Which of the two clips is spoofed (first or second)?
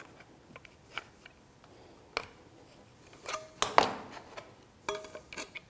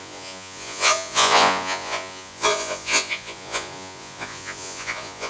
second